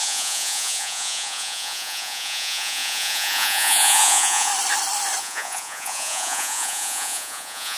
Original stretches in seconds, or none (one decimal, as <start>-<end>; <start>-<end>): 4.5-5.2